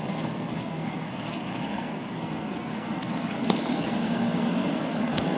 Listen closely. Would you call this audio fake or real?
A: fake